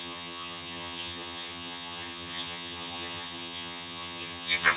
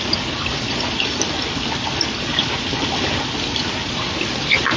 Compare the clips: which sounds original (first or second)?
second